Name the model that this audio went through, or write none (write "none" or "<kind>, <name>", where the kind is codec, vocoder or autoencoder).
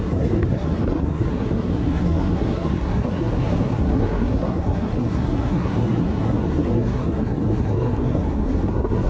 codec, SNAC